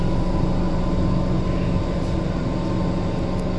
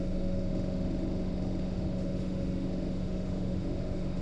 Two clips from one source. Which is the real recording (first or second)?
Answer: first